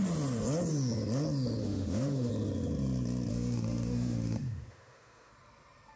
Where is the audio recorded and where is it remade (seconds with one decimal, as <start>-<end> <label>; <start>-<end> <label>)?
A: 0.0-1.6 recorded; 1.6-2.3 remade; 2.3-3.3 recorded; 3.3-5.3 remade; 5.3-6.0 recorded